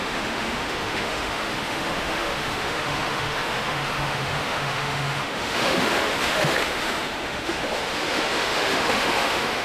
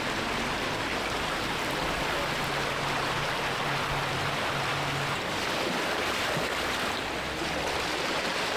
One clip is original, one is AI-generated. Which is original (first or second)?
second